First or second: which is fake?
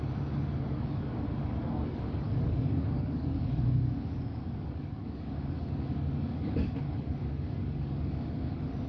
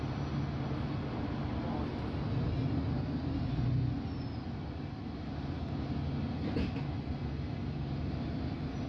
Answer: first